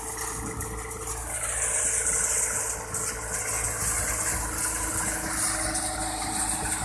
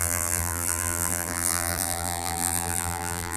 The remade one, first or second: second